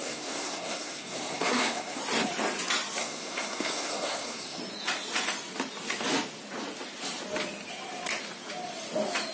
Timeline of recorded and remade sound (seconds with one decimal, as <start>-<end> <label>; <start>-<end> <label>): 0.0-2.0 remade; 2.0-3.0 recorded; 3.0-4.6 remade; 4.6-9.3 recorded